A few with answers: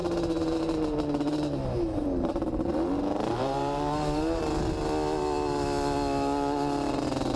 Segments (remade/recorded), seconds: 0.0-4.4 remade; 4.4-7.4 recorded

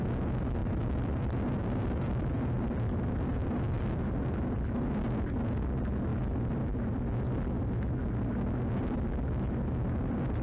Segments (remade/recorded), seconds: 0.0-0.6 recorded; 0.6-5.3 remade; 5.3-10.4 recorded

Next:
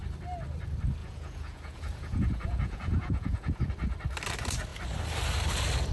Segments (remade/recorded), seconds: 0.0-1.0 recorded; 1.0-3.6 remade; 3.6-5.9 recorded

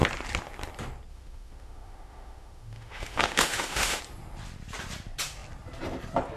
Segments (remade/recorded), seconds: 0.0-1.1 recorded; 1.1-4.0 remade; 4.0-6.4 recorded

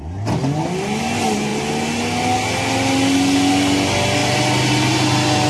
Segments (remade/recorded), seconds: 0.0-5.5 recorded

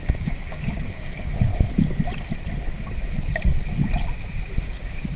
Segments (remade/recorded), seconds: 0.0-1.5 remade; 1.5-4.6 recorded; 4.6-5.2 remade